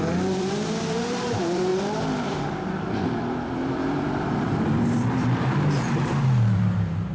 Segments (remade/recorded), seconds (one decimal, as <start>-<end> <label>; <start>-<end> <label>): 0.0-1.7 remade; 1.7-2.2 recorded; 2.2-7.1 remade